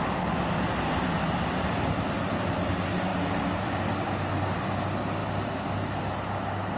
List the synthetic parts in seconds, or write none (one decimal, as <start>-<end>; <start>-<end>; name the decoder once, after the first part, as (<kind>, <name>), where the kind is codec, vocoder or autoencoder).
none